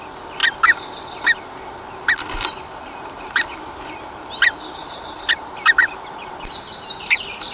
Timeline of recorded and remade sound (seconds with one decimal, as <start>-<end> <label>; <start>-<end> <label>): 0.0-7.5 recorded